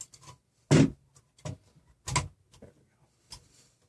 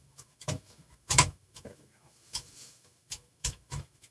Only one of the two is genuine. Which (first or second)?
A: first